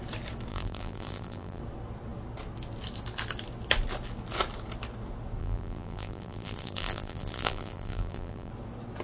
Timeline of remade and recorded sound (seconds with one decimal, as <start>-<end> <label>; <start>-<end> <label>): 0.0-0.5 recorded; 0.5-1.6 remade; 1.6-5.4 recorded; 5.4-8.5 remade; 8.5-9.0 recorded